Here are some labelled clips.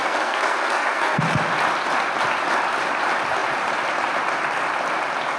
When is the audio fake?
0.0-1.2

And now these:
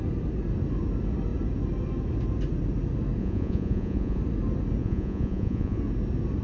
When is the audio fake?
3.2-4.2; 4.8-5.8

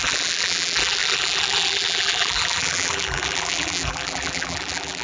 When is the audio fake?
0.0-5.0